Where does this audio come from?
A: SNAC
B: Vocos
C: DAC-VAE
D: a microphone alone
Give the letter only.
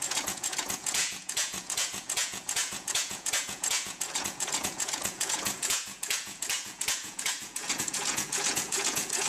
B